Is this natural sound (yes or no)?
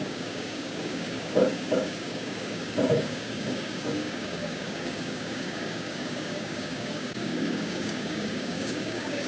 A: no